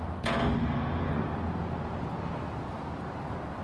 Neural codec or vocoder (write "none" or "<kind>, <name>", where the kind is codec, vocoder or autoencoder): none